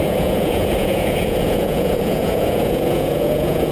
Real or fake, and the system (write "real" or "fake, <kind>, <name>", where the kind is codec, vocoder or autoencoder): fake, vocoder, Vocos